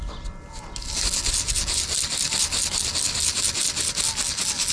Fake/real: real